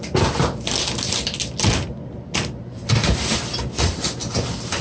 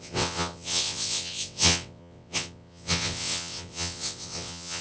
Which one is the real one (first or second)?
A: first